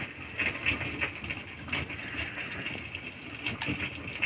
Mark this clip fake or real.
real